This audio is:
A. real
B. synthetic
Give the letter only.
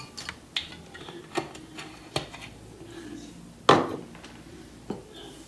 A